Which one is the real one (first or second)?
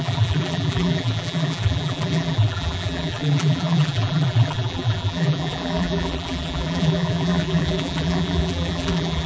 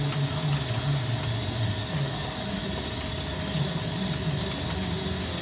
second